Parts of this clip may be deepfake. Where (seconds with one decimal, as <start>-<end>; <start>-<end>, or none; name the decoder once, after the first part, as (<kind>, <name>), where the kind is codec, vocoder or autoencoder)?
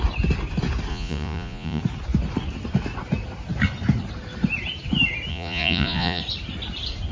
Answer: 0.9-1.8 (vocoder, Vocos); 5.3-6.2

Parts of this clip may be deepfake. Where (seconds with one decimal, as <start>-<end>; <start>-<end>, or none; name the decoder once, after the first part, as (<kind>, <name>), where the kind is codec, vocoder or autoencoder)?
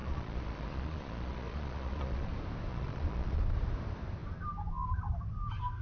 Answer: 0.0-2.3 (vocoder, Vocos); 2.7-3.4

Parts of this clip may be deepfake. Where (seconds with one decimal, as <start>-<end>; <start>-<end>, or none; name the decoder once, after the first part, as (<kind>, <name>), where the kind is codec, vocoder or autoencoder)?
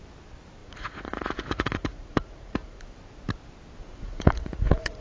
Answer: 0.6-2.8 (vocoder, Vocos); 3.8-5.0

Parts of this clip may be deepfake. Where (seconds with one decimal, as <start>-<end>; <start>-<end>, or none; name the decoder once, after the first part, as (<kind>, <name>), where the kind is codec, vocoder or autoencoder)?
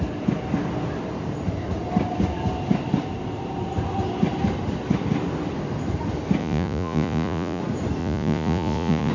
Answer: 6.4-7.6 (vocoder, Vocos); 8.0-9.1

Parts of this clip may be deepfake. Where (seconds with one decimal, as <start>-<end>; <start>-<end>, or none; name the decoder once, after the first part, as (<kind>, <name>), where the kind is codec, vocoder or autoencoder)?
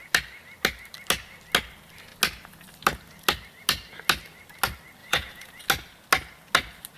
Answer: 5.0-5.6 (vocoder, Vocos)